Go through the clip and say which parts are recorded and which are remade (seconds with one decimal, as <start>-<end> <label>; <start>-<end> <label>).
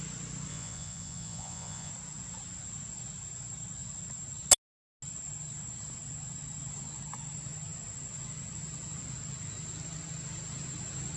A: 0.0-0.5 recorded; 0.5-1.9 remade; 1.9-11.2 recorded